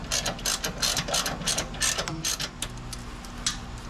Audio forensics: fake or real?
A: real